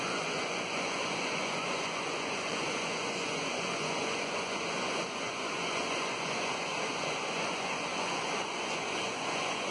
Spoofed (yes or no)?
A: yes